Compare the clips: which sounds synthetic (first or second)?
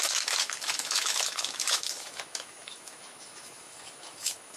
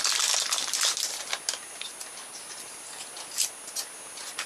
first